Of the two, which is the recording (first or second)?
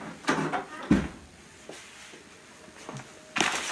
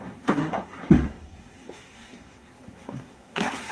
first